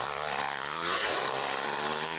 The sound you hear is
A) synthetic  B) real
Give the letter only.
A